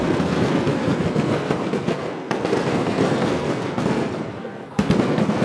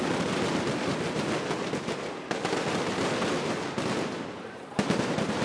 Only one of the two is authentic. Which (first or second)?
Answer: second